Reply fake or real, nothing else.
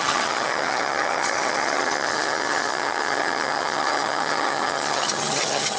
fake